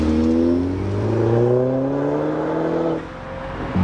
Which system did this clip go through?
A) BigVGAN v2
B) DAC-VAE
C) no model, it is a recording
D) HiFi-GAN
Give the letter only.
C